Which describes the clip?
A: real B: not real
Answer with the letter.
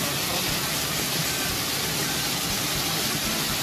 A